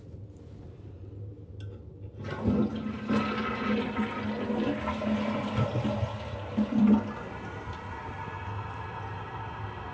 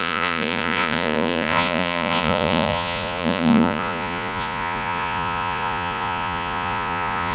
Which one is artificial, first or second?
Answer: second